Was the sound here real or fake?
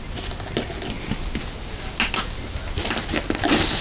real